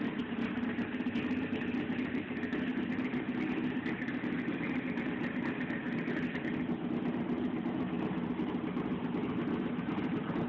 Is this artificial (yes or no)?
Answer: no